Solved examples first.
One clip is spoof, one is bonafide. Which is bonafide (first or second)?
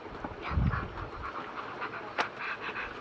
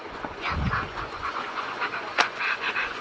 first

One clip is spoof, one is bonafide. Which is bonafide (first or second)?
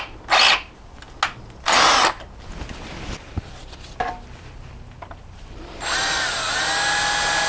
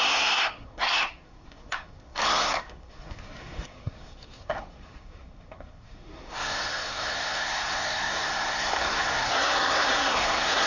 first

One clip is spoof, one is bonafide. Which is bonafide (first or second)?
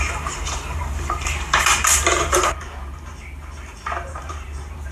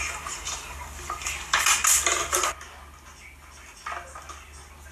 second